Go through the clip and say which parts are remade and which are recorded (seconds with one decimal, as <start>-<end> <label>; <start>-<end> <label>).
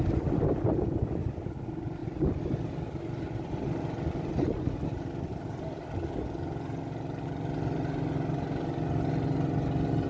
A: 0.0-10.1 recorded